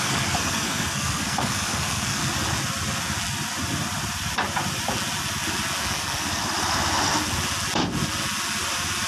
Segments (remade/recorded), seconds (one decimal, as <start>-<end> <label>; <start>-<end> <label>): 0.0-2.2 remade; 2.2-5.8 recorded; 5.8-6.4 remade; 6.4-9.1 recorded